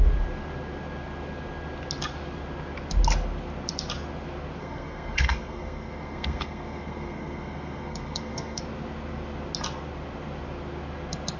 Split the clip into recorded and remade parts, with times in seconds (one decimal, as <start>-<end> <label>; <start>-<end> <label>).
0.0-4.6 recorded; 4.6-8.6 remade; 8.6-11.4 recorded